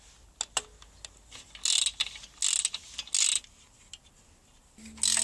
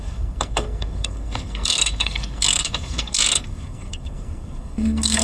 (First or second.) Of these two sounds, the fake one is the second